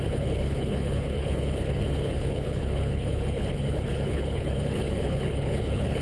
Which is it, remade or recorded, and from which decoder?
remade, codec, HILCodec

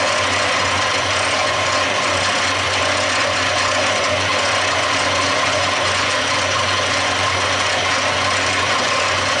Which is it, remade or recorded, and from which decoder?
remade, vocoder, Vocos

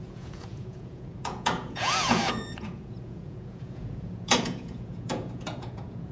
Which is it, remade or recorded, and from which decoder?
remade, vocoder, Vocos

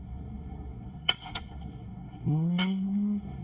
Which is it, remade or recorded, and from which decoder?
remade, codec, SNAC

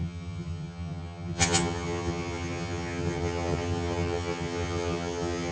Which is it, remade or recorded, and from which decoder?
remade, vocoder, HiFi-GAN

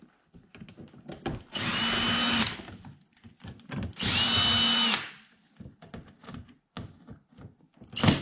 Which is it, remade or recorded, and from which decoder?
recorded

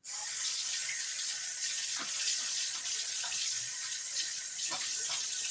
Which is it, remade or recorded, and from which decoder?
remade, vocoder, Vocos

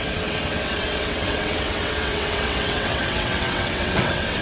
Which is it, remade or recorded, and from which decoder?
remade, vocoder, WaveNeXt